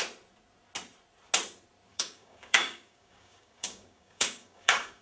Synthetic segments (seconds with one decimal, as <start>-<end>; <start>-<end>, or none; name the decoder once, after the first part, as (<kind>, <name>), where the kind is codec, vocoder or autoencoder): 1.9-5.0 (codec, DAC)